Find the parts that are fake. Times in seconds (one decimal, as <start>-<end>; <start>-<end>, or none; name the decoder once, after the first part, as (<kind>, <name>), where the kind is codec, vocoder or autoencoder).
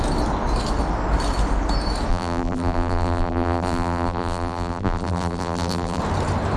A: 2.1-6.0 (vocoder, BigVGAN v2)